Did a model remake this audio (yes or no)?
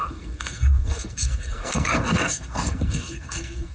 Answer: yes